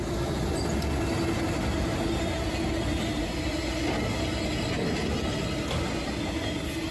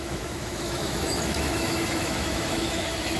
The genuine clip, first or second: first